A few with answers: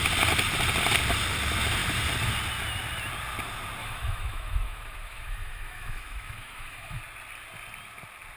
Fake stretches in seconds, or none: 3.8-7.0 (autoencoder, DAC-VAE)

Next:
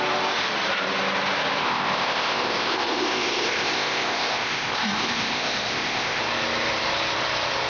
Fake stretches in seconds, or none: 1.6-6.2 (codec, ZipCodec)

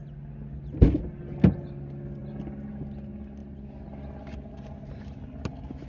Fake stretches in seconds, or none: none

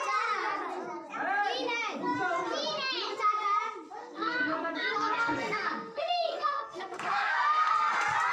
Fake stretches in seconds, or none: 4.0-7.7 (codec, SNAC)

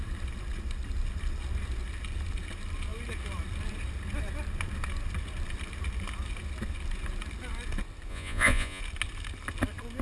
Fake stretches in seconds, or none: 8.1-8.8 (vocoder, Vocos)

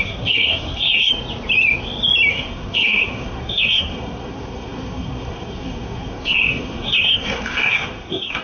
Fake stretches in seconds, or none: 0.0-1.1 (codec, SNAC); 2.3-8.4